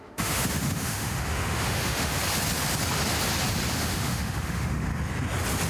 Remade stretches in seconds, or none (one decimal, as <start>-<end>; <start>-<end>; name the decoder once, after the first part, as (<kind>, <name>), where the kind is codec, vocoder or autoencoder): 0.0-2.1 (autoencoder, DAC-VAE); 3.7-4.9

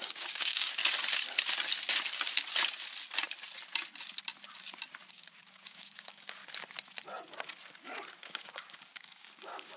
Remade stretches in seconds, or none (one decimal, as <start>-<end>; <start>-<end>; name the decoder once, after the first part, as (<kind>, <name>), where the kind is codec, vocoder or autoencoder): 0.0-0.8 (codec, DAC); 5.1-6.4; 8.2-9.8

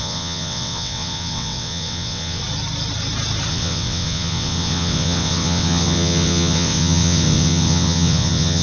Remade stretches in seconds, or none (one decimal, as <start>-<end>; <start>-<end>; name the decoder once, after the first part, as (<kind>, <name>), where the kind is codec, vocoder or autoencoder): 0.0-2.4 (vocoder, WaveNeXt); 3.5-8.6